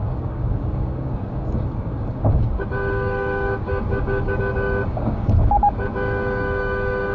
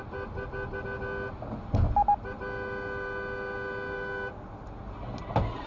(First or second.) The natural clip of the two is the second